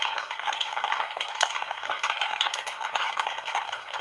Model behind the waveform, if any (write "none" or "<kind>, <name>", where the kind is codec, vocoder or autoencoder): codec, SNAC